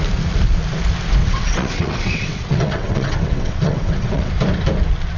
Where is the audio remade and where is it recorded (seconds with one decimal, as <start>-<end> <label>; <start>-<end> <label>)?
0.0-1.2 recorded; 1.2-4.3 remade; 4.3-5.2 recorded